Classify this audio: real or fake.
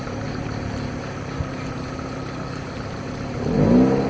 real